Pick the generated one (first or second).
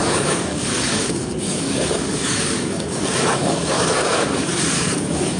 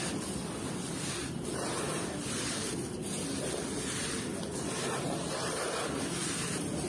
first